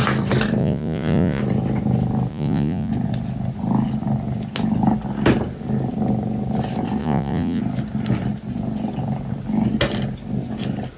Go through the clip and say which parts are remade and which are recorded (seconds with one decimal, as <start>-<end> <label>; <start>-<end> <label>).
0.0-0.6 recorded; 0.6-1.4 remade; 1.4-2.3 recorded; 2.3-2.9 remade; 2.9-7.0 recorded; 7.0-7.6 remade; 7.6-11.0 recorded